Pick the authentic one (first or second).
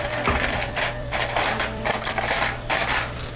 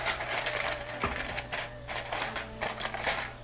second